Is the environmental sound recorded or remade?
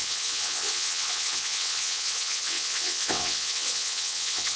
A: remade